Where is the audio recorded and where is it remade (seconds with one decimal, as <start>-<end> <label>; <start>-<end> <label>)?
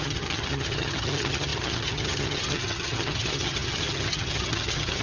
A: 0.0-5.0 remade